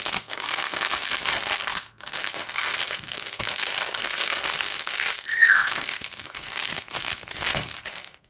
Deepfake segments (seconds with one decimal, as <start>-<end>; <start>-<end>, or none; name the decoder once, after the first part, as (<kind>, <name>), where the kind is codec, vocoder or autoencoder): 0.0-8.3 (codec, SNAC)